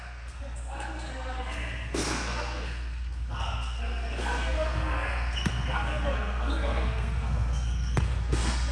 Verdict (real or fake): fake